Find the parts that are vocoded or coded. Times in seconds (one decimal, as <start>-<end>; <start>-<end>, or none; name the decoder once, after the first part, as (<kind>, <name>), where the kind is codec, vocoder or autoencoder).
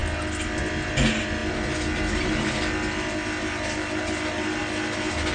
none